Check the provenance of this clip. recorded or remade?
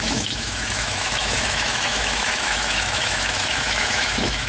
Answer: remade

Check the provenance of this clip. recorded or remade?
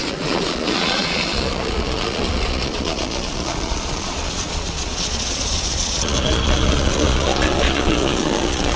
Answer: remade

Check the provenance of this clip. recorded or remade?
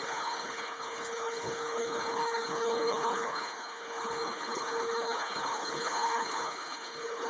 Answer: remade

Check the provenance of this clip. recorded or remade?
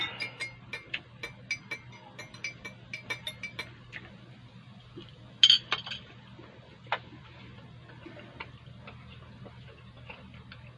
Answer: recorded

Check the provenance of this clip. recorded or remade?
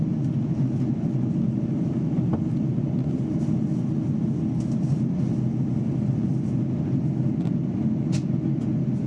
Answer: recorded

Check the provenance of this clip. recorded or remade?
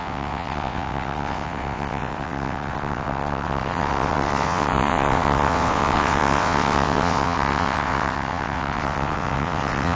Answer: remade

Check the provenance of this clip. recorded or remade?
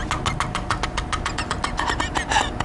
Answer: recorded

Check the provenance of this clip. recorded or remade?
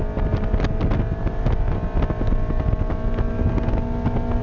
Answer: recorded